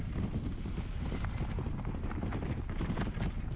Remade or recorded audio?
recorded